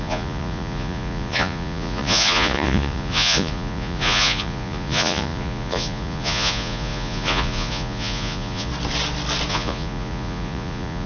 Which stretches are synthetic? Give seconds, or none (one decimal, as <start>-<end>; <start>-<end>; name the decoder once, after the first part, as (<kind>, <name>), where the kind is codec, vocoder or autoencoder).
0.0-8.7 (vocoder, Vocos); 9.5-11.1